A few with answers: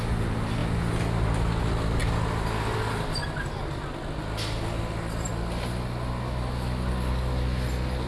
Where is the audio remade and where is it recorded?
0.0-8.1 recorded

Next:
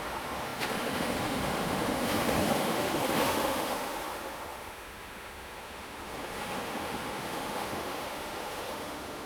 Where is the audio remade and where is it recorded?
0.0-9.2 remade